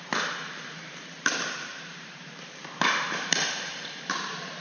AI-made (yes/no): yes